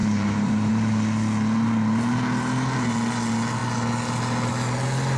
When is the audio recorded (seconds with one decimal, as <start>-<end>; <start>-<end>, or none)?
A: 0.7-5.2